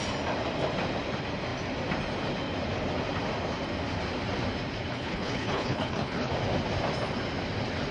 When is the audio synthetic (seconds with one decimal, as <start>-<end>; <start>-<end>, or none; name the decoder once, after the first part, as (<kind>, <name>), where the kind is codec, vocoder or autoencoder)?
4.9-6.3 (codec, HILCodec)